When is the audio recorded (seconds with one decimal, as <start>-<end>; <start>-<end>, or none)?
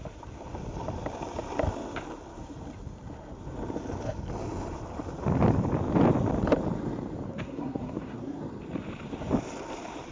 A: 0.0-7.3; 8.4-10.1